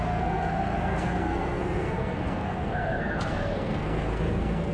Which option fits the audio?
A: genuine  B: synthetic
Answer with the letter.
B